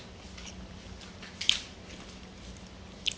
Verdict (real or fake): real